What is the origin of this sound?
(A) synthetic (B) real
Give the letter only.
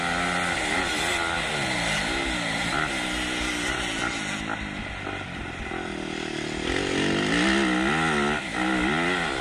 B